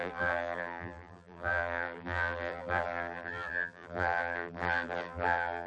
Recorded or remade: remade